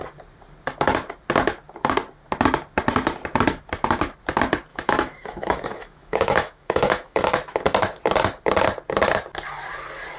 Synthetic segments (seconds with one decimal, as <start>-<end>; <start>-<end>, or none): 4.7-7.2